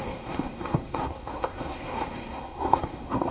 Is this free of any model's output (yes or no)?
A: no